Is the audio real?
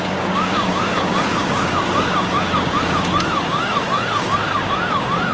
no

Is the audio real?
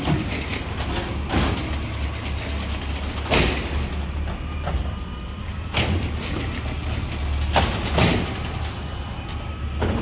yes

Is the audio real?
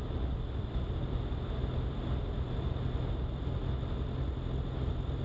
yes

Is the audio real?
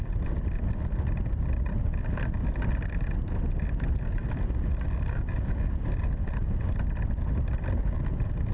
yes